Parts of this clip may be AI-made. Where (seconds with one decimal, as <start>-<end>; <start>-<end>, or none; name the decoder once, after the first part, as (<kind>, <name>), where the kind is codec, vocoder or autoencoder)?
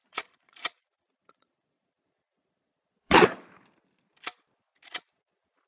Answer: 0.0-3.4 (vocoder, Vocos); 4.7-5.7